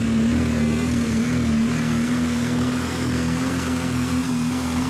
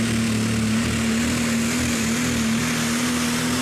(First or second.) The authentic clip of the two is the second